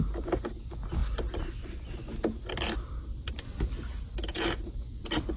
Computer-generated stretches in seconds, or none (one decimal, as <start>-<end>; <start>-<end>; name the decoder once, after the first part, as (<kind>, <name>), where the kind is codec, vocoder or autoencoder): 4.3-4.9 (vocoder, Vocos)